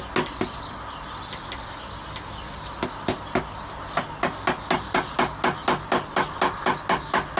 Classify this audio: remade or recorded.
recorded